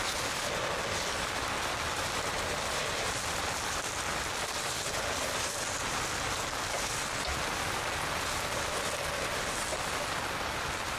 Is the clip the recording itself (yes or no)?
yes